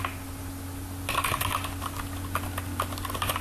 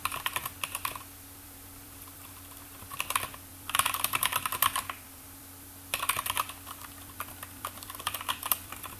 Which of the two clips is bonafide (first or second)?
first